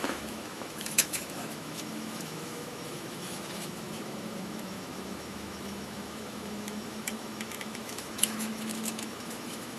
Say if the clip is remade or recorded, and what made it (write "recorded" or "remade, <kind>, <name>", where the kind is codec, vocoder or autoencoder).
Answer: remade, autoencoder, DAC-VAE